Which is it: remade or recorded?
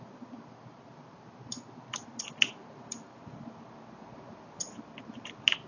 recorded